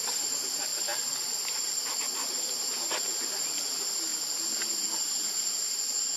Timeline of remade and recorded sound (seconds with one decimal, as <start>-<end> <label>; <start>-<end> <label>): 0.0-6.2 recorded

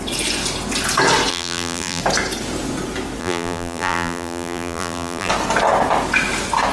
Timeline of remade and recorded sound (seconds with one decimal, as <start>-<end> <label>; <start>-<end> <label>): 0.0-1.3 recorded; 1.3-2.0 remade; 2.0-3.2 recorded; 3.2-5.3 remade; 5.3-6.7 recorded

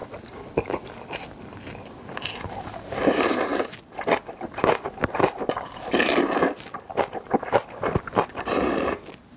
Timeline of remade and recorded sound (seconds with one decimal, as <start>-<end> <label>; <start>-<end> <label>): 0.0-2.4 recorded; 2.4-9.4 remade

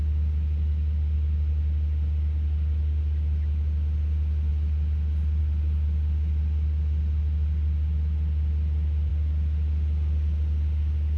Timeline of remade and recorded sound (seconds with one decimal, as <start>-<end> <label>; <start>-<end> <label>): 0.0-11.2 recorded